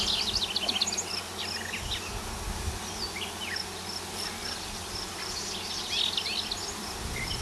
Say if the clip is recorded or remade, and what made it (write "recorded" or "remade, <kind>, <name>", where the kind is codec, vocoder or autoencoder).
recorded